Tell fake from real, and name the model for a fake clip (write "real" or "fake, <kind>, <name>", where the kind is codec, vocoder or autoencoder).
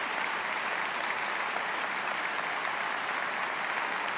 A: real